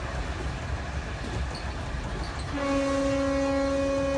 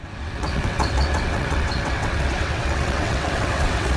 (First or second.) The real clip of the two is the first